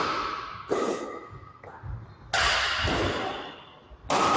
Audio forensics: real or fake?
real